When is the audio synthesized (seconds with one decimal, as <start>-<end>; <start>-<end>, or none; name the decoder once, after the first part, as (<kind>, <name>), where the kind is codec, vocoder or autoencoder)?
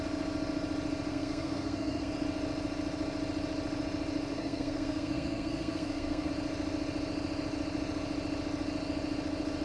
1.1-2.1 (codec, SNAC); 4.3-6.3